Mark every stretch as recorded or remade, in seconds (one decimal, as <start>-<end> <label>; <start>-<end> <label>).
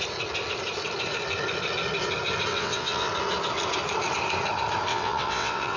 0.0-2.5 recorded; 2.5-3.1 remade; 3.1-4.9 recorded; 4.9-5.8 remade